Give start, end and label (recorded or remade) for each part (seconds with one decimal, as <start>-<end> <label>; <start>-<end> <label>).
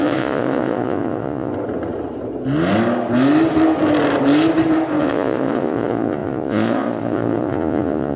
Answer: 0.0-1.5 remade; 1.5-5.0 recorded; 5.0-8.2 remade